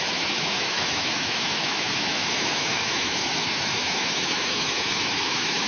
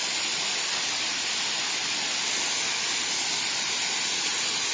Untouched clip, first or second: second